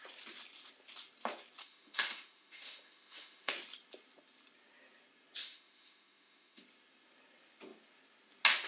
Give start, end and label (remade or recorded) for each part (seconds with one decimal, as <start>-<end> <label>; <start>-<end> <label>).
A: 0.0-1.6 recorded; 1.6-3.5 remade; 3.5-5.4 recorded; 5.4-6.6 remade; 6.6-8.7 recorded